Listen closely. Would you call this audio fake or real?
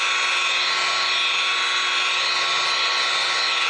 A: real